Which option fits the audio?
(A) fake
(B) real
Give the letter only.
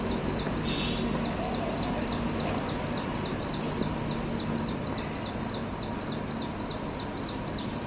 B